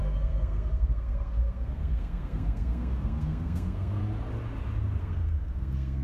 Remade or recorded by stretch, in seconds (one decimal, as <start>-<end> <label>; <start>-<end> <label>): 0.0-4.0 remade; 4.0-5.0 recorded; 5.0-6.0 remade